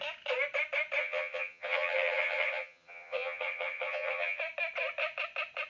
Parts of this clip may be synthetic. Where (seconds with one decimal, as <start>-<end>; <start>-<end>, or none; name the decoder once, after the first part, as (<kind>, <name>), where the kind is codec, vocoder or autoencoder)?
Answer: 1.0-4.4 (vocoder, HiFi-GAN)